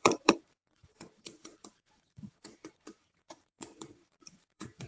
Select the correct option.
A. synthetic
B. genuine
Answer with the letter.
A